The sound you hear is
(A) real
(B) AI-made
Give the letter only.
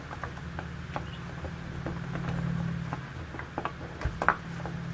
A